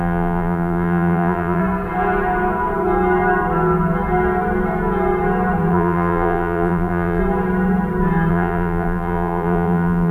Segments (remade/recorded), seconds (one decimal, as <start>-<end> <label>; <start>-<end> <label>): 0.0-1.6 remade; 1.6-5.7 recorded; 5.7-7.2 remade; 7.2-8.3 recorded; 8.3-10.1 remade